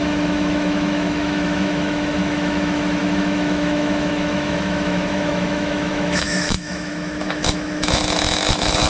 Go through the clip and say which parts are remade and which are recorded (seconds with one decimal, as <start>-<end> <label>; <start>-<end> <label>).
0.0-8.9 remade